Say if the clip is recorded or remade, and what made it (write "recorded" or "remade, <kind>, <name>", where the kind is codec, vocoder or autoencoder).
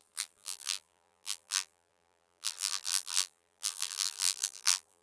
remade, vocoder, BigVGAN v2